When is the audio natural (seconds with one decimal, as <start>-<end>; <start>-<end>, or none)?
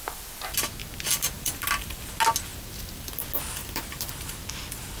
0.0-0.8; 2.1-2.5; 3.2-3.6; 4.1-5.0